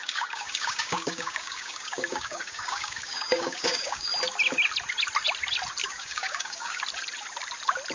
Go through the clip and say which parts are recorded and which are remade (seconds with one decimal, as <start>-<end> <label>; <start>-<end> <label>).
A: 0.0-4.1 remade; 4.1-5.8 recorded; 5.8-6.8 remade; 6.8-7.9 recorded